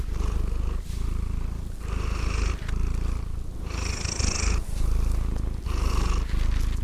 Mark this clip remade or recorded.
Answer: recorded